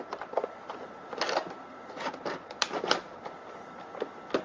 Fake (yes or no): no